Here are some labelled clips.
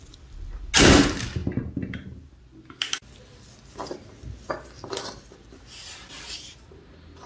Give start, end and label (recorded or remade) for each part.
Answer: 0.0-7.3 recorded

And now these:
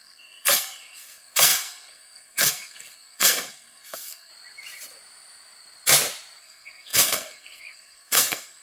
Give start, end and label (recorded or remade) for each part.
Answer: 0.0-4.3 remade; 4.3-6.4 recorded; 6.4-8.6 remade

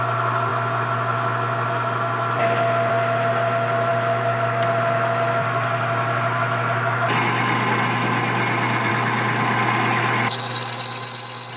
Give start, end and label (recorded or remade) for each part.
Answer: 0.0-11.6 recorded

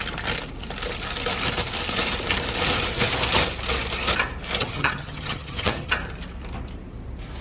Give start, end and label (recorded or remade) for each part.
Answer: 0.0-4.6 recorded; 4.6-5.9 remade; 5.9-7.4 recorded